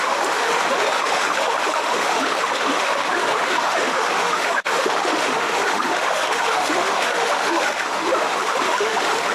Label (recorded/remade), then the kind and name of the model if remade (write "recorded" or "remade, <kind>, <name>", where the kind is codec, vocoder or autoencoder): remade, autoencoder, DAC-VAE